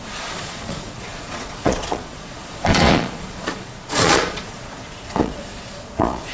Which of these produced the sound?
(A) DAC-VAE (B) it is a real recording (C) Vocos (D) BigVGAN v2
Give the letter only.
C